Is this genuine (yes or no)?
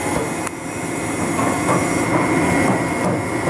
yes